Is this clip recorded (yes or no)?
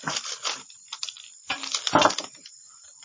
yes